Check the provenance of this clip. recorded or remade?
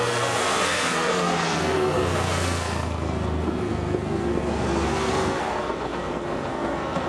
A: remade